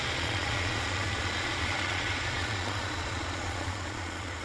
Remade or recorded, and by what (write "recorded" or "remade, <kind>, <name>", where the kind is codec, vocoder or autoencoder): remade, vocoder, Vocos